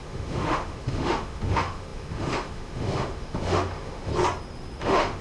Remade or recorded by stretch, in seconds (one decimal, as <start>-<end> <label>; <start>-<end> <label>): 0.0-4.1 remade; 4.1-4.8 recorded; 4.8-5.2 remade